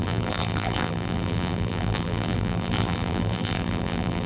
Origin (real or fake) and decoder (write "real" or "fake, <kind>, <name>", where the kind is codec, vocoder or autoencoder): fake, vocoder, BigVGAN v2